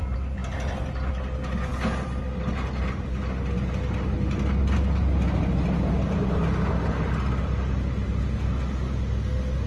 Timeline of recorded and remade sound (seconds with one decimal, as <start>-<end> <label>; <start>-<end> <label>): 0.0-9.7 recorded